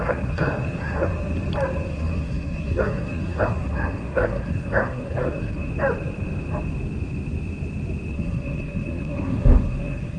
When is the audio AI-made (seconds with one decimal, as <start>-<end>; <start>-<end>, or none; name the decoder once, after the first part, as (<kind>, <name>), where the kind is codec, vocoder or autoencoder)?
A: 0.0-1.1 (codec, SNAC); 1.9-5.7; 8.1-10.2